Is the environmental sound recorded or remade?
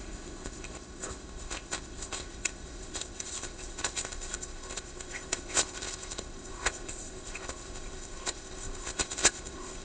remade